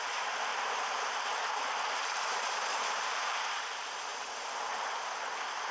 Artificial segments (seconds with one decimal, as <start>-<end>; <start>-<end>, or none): 0.5-3.6